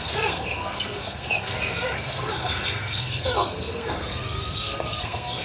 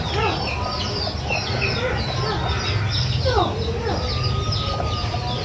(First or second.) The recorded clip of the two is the second